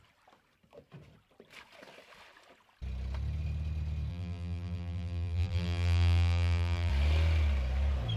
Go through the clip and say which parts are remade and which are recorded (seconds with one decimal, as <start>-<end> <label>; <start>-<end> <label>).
0.0-4.1 recorded; 4.1-6.9 remade; 6.9-8.2 recorded